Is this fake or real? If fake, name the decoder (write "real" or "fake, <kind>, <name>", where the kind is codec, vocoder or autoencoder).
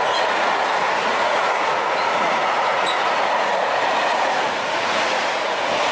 fake, vocoder, Vocos